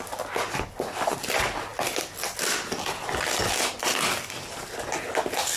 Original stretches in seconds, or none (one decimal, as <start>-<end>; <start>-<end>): 0.0-5.6